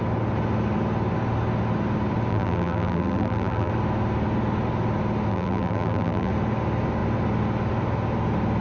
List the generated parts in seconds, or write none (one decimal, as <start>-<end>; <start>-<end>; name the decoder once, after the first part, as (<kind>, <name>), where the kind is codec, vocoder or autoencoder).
2.3-3.7 (vocoder, BigVGAN v2); 5.3-6.3